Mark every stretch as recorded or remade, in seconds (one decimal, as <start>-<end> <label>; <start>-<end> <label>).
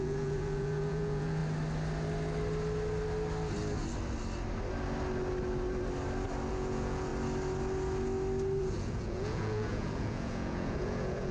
0.0-1.4 remade; 1.4-6.5 recorded; 6.5-7.1 remade; 7.1-8.6 recorded; 8.6-11.3 remade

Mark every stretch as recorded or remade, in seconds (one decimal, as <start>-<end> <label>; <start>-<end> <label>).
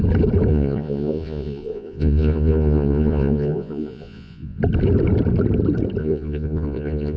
0.0-0.5 recorded; 0.5-4.6 remade; 4.6-6.0 recorded; 6.0-7.2 remade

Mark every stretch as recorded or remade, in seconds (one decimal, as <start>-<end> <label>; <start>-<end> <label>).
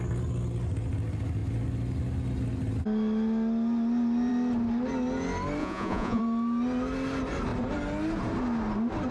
0.0-5.6 recorded; 5.6-6.2 remade; 6.2-9.1 recorded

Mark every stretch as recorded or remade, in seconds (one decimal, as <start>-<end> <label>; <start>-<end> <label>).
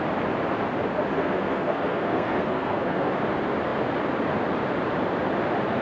0.0-1.1 recorded; 1.1-3.1 remade; 3.1-5.8 recorded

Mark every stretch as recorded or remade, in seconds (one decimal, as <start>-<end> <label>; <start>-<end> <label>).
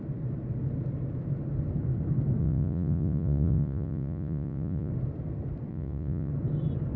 0.0-2.4 recorded; 2.4-4.9 remade; 4.9-5.7 recorded; 5.7-6.3 remade; 6.3-7.0 recorded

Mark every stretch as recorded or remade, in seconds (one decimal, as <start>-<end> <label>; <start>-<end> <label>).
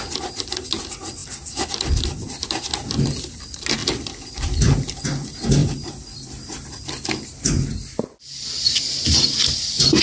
0.0-3.8 recorded; 3.8-4.3 remade; 4.3-5.6 recorded; 5.6-6.9 remade; 6.9-10.0 recorded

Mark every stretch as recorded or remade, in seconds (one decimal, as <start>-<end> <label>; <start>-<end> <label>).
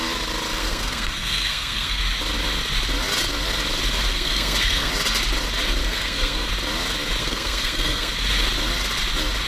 0.0-0.6 recorded; 0.6-2.0 remade; 2.0-4.1 recorded; 4.1-4.9 remade; 4.9-5.8 recorded; 5.8-6.5 remade; 6.5-7.2 recorded; 7.2-8.1 remade; 8.1-9.5 recorded